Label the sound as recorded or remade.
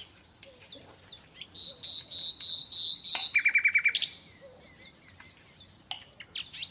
recorded